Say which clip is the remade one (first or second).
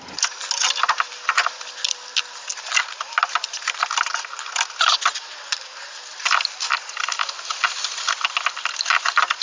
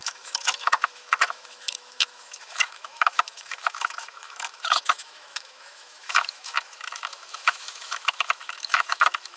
second